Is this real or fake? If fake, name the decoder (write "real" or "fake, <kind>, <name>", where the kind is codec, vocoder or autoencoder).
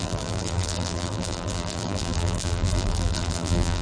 fake, vocoder, BigVGAN v2